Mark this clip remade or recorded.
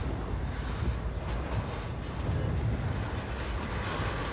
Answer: recorded